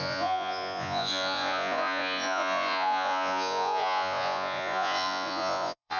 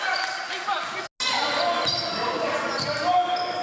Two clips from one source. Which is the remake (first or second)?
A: first